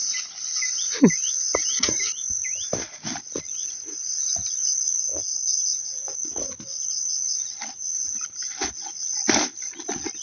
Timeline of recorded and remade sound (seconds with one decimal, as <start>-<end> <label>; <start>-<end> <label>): 0.0-10.2 recorded